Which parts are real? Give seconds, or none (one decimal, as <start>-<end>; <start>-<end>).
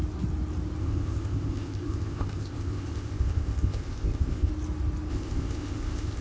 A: 0.0-0.8; 4.5-5.1